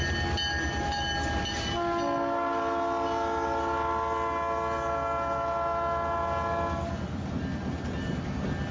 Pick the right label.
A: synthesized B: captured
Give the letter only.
B